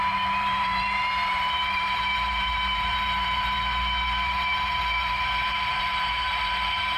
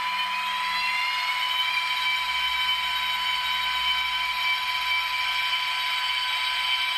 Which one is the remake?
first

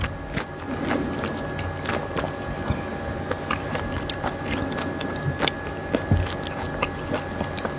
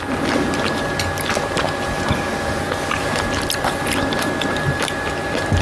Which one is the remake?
second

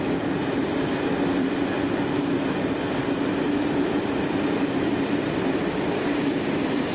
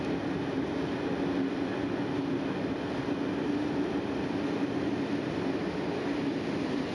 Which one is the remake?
first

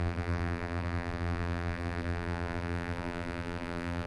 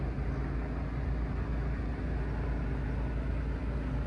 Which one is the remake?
first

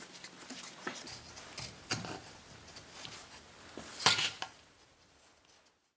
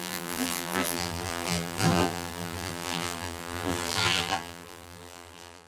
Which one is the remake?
second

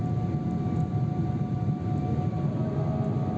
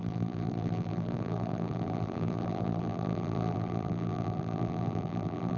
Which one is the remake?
second